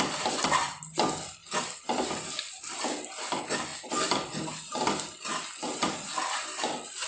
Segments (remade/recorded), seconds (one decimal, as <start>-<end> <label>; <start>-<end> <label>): 0.0-7.1 recorded